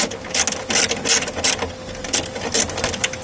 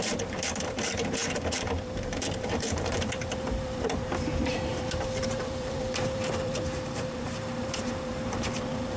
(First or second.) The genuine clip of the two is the first